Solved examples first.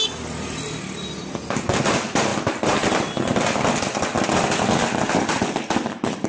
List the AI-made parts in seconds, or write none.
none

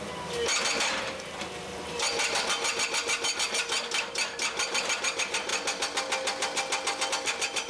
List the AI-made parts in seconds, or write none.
0.0-5.5 (vocoder, BigVGAN v2); 7.1-7.7

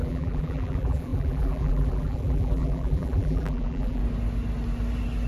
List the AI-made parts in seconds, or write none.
0.0-4.0 (vocoder, BigVGAN v2)